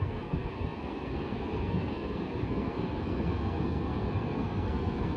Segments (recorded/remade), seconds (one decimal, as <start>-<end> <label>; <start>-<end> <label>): 0.0-5.2 remade